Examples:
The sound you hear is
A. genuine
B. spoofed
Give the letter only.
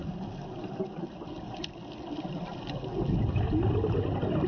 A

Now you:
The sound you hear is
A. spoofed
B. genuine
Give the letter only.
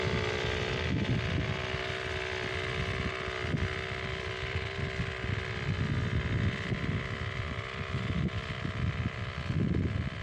B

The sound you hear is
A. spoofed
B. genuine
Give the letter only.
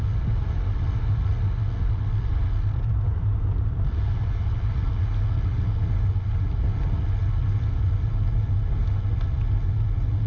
B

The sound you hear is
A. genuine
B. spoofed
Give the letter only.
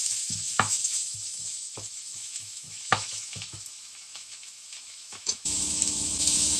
B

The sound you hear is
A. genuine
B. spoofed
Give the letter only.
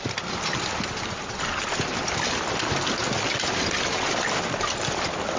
A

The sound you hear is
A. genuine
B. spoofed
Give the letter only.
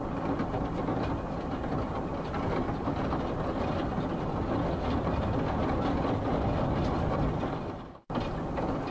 A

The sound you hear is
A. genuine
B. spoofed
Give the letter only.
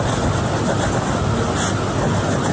A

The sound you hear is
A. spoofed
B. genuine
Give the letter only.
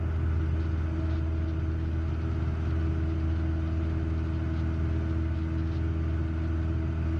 B